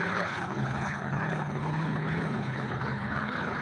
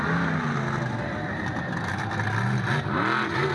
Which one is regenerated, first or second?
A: first